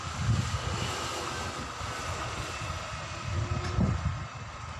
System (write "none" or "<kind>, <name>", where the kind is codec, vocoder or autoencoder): none